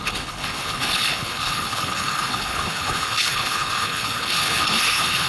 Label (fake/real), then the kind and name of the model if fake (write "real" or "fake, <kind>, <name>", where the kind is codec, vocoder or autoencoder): fake, codec, HILCodec